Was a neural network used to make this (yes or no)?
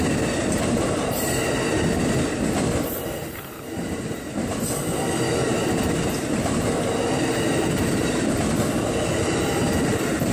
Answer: no